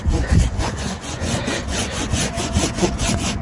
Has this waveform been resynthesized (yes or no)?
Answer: yes